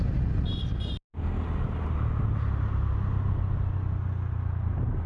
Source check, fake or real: real